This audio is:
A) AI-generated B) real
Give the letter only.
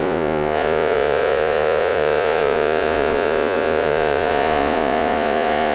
A